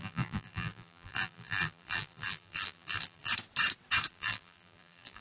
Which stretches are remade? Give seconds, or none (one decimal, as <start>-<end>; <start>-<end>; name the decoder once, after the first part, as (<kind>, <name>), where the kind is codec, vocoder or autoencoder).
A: 0.0-3.3 (vocoder, BigVGAN v2); 4.1-5.2